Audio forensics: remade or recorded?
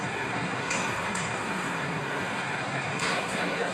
remade